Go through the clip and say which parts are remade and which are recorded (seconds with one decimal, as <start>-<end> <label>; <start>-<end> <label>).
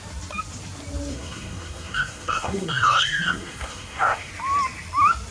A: 0.0-1.1 recorded; 1.1-4.3 remade; 4.3-5.3 recorded